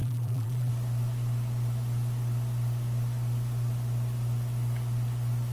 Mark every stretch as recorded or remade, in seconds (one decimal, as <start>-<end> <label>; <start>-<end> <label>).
0.0-0.7 remade; 0.7-5.5 recorded